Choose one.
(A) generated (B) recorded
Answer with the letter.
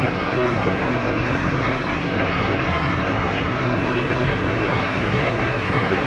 A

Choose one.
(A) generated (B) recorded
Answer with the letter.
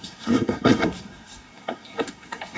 A